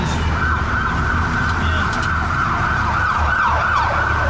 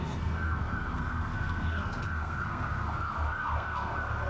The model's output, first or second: second